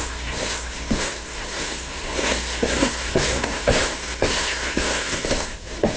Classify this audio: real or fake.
fake